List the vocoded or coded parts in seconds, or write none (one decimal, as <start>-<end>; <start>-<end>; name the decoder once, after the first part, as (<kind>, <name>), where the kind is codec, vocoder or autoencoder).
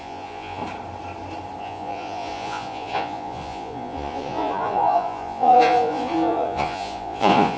0.0-0.6 (vocoder, Vocos); 1.6-7.6